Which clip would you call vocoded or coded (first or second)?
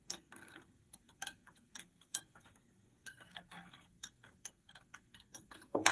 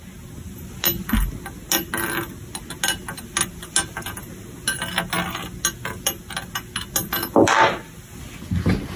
first